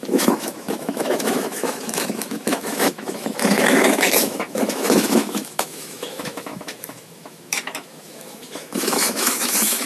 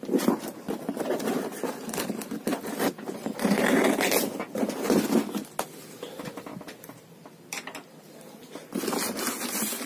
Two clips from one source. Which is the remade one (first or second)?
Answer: first